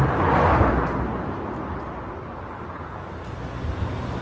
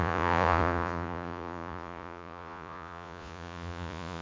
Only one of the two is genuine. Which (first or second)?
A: first